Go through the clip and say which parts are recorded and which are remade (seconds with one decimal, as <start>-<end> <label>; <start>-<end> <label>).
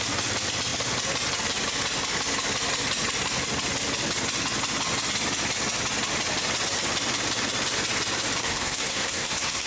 0.0-8.4 recorded; 8.4-9.7 remade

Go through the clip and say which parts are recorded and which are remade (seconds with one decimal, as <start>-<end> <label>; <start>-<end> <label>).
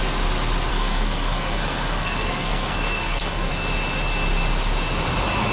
0.0-0.7 recorded; 0.7-3.5 remade; 3.5-5.5 recorded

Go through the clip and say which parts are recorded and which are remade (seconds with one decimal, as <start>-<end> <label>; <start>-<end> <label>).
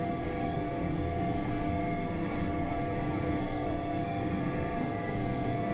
0.0-2.7 remade; 2.7-3.4 recorded; 3.4-5.7 remade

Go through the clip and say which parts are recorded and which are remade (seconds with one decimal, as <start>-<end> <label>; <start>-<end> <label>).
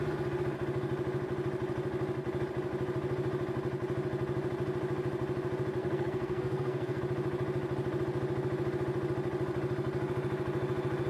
0.0-5.8 recorded; 5.8-7.0 remade; 7.0-11.1 recorded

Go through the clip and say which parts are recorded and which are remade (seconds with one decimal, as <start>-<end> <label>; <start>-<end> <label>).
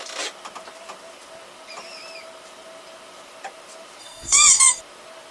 0.0-4.0 recorded; 4.0-4.8 remade; 4.8-5.3 recorded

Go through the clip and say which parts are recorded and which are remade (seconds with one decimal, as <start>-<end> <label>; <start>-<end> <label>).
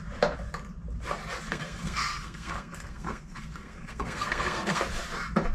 0.0-1.5 recorded; 1.5-4.8 remade; 4.8-5.5 recorded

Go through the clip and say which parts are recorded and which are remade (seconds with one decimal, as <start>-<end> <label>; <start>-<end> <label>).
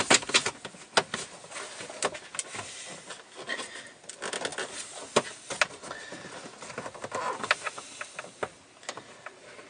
0.0-9.7 recorded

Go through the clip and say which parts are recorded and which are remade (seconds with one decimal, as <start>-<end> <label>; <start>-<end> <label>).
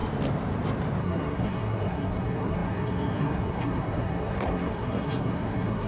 0.0-1.0 recorded; 1.0-5.9 remade